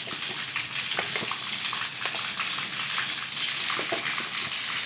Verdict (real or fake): real